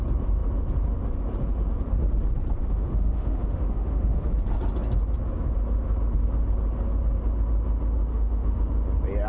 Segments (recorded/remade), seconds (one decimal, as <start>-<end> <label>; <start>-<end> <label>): 0.0-2.6 recorded; 2.6-4.3 remade; 4.3-8.1 recorded; 8.1-8.6 remade; 8.6-9.3 recorded

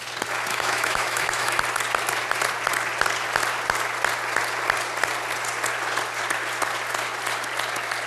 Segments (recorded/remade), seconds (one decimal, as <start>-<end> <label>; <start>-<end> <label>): 0.0-0.5 recorded; 0.5-1.6 remade; 1.6-8.1 recorded

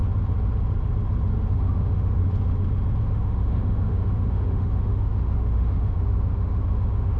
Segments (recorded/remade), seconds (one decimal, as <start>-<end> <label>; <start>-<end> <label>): 0.0-1.5 recorded; 1.5-2.2 remade; 2.2-3.0 recorded; 3.0-7.2 remade